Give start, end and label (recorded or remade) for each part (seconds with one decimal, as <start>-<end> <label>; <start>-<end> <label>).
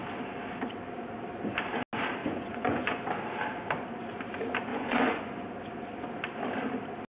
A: 0.0-2.2 recorded; 2.2-3.1 remade; 3.1-4.7 recorded; 4.7-5.4 remade; 5.4-7.1 recorded